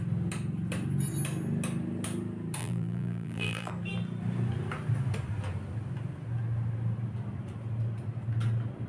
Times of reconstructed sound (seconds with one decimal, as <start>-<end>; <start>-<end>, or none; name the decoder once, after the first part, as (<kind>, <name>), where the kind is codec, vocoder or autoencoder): 2.6-3.7 (vocoder, BigVGAN v2)